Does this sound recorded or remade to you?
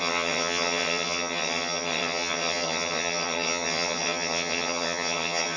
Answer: remade